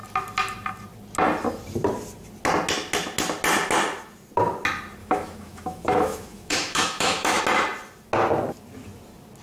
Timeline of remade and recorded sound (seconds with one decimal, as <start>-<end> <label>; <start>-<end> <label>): 0.0-5.0 recorded; 5.0-7.4 remade; 7.4-9.4 recorded